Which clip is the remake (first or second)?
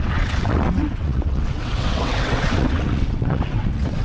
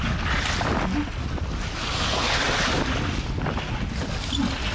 first